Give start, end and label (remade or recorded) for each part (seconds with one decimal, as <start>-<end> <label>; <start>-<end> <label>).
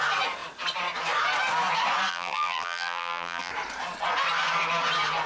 0.0-2.1 recorded; 2.1-3.5 remade; 3.5-5.3 recorded